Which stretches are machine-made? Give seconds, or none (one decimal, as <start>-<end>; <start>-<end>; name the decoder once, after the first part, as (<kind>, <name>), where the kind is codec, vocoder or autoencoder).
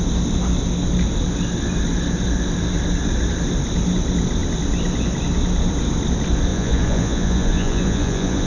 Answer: 6.5-8.5 (vocoder, Vocos)